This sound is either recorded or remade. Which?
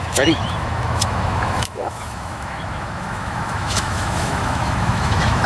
remade